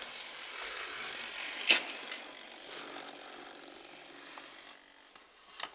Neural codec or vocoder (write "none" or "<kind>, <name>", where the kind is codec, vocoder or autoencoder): none